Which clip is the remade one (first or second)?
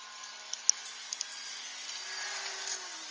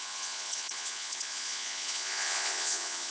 second